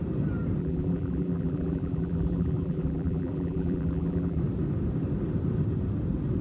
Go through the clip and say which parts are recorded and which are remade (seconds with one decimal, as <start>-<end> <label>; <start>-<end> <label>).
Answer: 0.0-0.6 recorded; 0.6-4.4 remade; 4.4-6.4 recorded